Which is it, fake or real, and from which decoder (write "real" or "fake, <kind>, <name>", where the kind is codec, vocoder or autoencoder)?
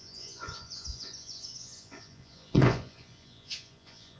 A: fake, vocoder, Vocos